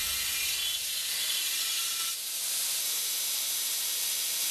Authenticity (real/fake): fake